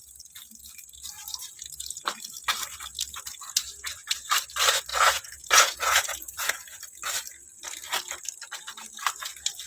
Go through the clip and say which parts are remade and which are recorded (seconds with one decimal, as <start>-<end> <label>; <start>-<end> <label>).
0.0-4.9 recorded; 4.9-6.8 remade; 6.8-9.7 recorded